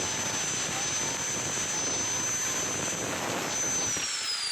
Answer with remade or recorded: recorded